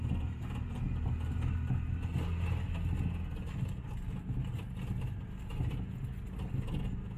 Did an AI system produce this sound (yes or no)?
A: no